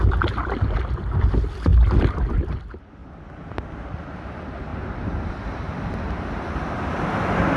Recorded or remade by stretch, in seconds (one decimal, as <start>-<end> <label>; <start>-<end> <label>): 0.0-7.6 recorded

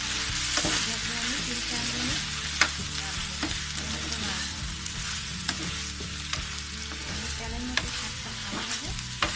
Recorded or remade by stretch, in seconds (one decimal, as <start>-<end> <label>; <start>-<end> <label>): 0.0-4.5 recorded; 4.5-5.6 remade; 5.6-8.1 recorded; 8.1-8.7 remade; 8.7-9.4 recorded

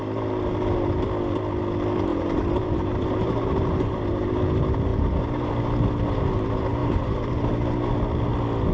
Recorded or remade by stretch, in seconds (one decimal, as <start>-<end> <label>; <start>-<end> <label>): 0.0-2.1 recorded; 2.1-4.4 remade; 4.4-4.9 recorded; 4.9-5.5 remade; 5.5-6.8 recorded; 6.8-7.5 remade; 7.5-8.7 recorded

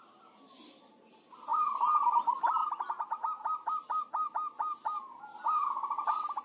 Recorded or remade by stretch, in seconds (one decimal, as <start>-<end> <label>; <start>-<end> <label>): 0.0-1.5 recorded; 1.5-2.2 remade; 2.2-6.4 recorded

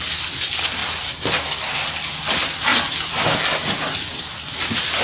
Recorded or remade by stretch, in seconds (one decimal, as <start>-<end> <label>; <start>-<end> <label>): 0.0-5.0 recorded

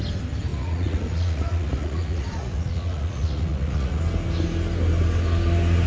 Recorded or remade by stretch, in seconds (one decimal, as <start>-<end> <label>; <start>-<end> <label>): 0.0-0.5 recorded; 0.5-4.0 remade; 4.0-5.9 recorded